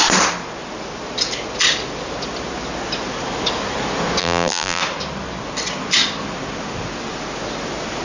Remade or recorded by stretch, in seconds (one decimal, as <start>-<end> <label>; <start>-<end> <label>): 0.0-4.2 recorded; 4.2-4.8 remade; 4.8-8.0 recorded